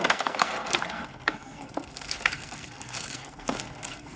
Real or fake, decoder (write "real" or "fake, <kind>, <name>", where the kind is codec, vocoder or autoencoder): fake, codec, SNAC